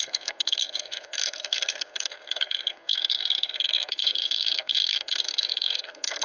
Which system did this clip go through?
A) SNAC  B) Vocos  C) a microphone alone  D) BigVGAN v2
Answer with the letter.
A